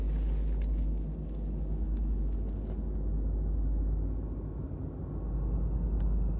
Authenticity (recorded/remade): recorded